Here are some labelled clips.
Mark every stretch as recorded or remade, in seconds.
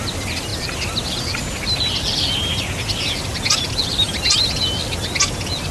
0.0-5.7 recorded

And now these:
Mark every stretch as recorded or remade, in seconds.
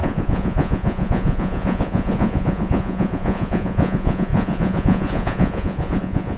0.0-6.4 remade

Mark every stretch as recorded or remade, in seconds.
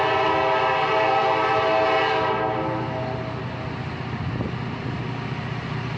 0.0-6.0 recorded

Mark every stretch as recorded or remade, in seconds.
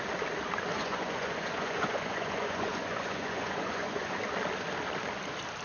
0.0-0.7 recorded; 0.7-4.1 remade; 4.1-5.6 recorded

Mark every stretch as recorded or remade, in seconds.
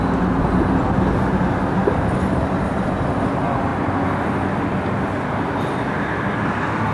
0.0-6.9 recorded